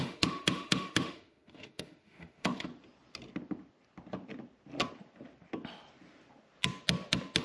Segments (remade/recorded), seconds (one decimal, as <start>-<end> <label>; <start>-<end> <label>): 0.0-2.7 remade; 2.7-7.4 recorded